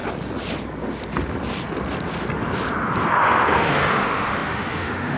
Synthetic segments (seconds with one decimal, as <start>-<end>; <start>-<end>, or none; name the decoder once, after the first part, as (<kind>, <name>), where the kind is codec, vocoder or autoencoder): 3.1-5.2 (autoencoder, DAC-VAE)